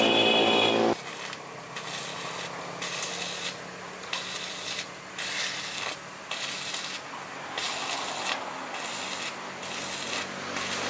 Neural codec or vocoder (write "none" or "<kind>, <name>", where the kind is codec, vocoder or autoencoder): none